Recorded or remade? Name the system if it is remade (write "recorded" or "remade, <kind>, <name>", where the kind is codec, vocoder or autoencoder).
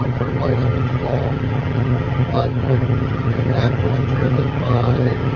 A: remade, vocoder, HiFi-GAN